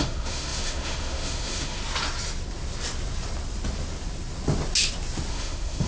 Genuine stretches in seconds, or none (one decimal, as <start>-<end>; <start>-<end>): 1.8-5.3